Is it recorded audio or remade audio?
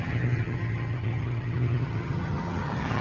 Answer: remade